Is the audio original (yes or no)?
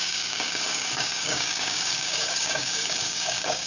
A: no